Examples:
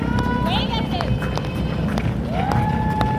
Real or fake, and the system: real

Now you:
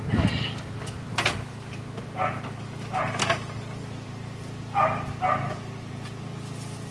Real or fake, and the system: real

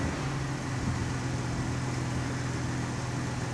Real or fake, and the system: real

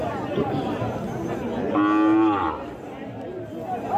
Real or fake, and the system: real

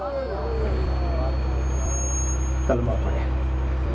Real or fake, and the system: real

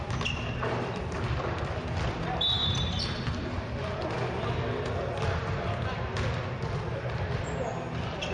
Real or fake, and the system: real